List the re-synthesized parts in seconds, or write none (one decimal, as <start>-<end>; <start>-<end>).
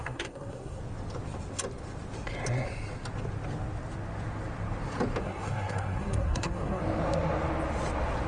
0.0-0.8; 5.2-6.8